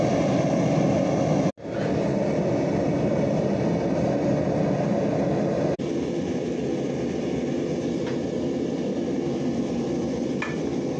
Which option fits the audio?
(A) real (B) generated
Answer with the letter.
A